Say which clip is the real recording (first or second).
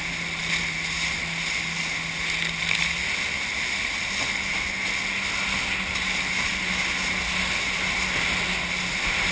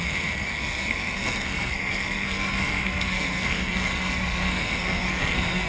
first